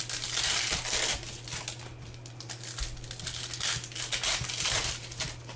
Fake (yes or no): no